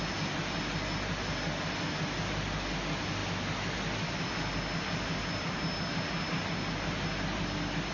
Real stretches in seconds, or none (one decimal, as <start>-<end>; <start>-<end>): 0.0-7.9